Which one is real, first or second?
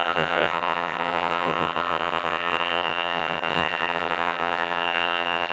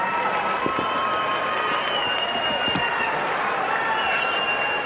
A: second